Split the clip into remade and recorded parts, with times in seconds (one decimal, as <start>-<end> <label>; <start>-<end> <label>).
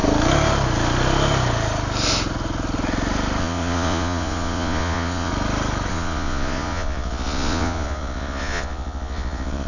0.0-3.4 recorded; 3.4-5.3 remade; 5.3-5.9 recorded; 5.9-9.7 remade